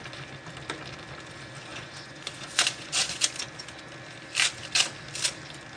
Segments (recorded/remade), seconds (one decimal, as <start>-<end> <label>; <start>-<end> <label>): 0.0-1.7 recorded; 1.7-3.3 remade; 3.3-5.8 recorded